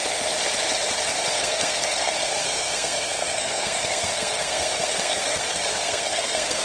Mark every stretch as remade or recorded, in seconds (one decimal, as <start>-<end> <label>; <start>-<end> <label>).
0.0-1.3 recorded; 1.3-6.6 remade